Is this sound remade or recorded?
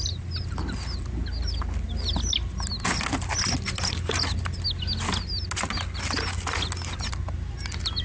recorded